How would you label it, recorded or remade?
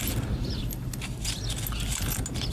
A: recorded